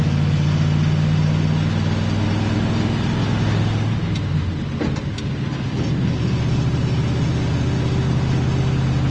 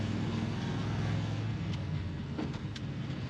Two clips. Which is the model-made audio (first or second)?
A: second